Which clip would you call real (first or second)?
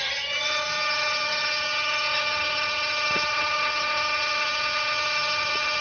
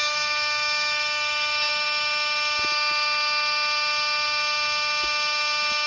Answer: second